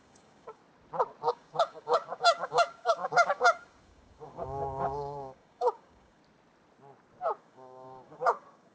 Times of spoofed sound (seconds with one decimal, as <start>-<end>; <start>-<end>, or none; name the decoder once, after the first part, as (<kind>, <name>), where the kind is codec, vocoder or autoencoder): 0.0-0.6 (codec, DAC); 1.3-6.2; 7.4-8.7